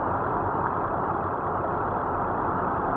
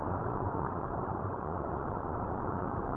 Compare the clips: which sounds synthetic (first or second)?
second